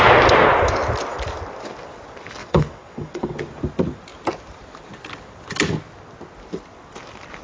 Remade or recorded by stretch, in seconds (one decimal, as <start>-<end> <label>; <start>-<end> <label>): 0.0-2.4 recorded; 2.4-3.4 remade; 3.4-7.4 recorded